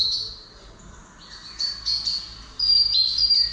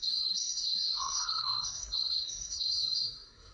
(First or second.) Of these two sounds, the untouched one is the first